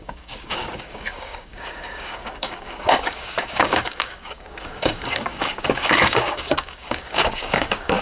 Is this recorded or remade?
remade